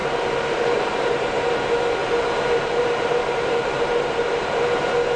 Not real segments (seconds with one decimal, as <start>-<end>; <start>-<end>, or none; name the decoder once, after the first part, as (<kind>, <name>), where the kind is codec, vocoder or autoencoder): 0.0-1.5 (vocoder, BigVGAN v2); 2.0-5.2